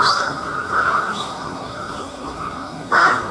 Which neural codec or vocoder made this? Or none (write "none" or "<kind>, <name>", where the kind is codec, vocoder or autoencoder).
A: codec, SNAC